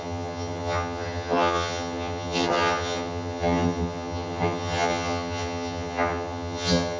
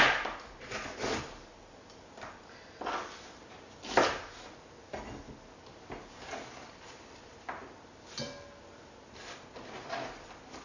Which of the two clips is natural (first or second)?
second